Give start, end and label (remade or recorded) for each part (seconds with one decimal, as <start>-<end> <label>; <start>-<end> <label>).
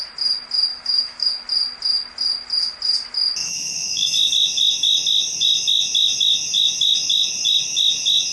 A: 0.0-0.7 recorded; 0.7-1.3 remade; 1.3-3.4 recorded; 3.4-4.3 remade; 4.3-8.3 recorded